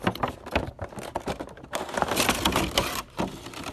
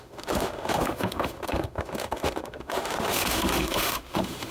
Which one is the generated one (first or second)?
second